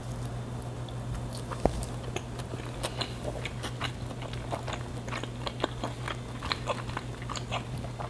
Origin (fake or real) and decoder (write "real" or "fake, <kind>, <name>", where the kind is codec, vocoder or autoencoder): real